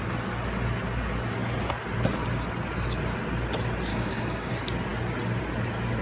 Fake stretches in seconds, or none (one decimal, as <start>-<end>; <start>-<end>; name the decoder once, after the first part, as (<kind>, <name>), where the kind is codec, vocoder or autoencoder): 3.9-4.5 (codec, DAC)